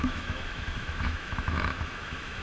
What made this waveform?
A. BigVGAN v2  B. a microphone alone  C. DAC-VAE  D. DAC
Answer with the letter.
C